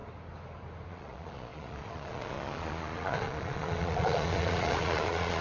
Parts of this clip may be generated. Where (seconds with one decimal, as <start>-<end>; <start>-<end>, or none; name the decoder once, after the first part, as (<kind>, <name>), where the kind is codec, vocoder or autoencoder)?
0.9-5.4 (vocoder, Vocos)